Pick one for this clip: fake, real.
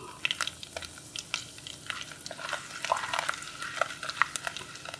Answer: real